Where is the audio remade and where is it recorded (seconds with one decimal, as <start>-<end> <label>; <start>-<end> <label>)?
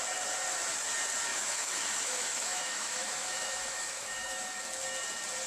0.0-1.3 recorded; 1.3-4.6 remade; 4.6-5.5 recorded